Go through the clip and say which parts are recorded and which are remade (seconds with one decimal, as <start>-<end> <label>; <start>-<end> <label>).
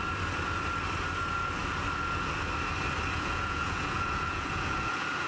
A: 0.0-3.1 recorded; 3.1-5.3 remade